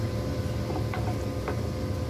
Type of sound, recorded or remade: recorded